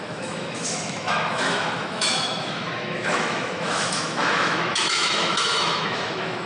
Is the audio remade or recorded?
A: remade